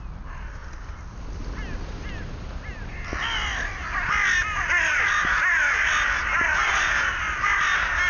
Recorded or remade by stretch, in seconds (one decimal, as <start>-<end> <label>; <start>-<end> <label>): 0.0-8.1 recorded